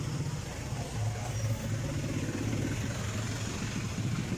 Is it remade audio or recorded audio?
recorded